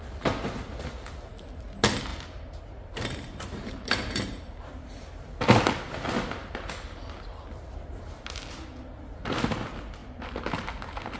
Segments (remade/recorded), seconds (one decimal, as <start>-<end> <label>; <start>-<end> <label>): 0.0-2.1 recorded; 2.1-4.8 remade; 4.8-11.2 recorded